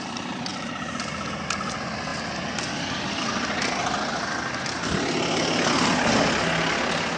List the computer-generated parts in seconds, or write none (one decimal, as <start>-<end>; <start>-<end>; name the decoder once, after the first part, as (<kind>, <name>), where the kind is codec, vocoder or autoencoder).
none